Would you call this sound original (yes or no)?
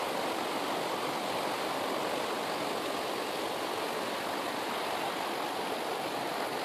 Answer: yes